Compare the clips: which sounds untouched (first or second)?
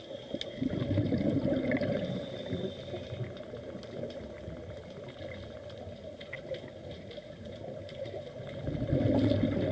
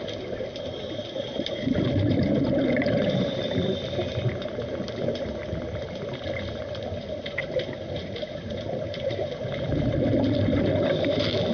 first